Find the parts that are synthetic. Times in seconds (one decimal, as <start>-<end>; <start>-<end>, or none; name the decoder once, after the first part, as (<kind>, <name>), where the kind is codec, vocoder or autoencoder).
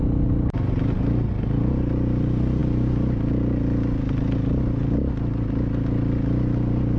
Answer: none